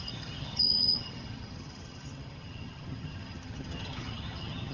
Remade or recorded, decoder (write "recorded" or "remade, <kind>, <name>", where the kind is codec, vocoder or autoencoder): remade, vocoder, HiFi-GAN